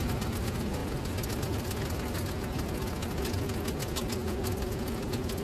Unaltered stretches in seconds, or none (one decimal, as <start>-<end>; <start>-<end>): 0.0-5.4